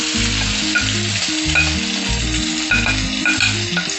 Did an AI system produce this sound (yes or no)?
no